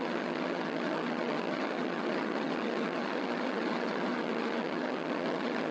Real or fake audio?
fake